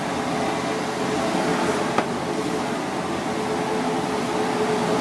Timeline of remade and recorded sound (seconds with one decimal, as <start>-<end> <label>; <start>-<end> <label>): 0.0-5.0 recorded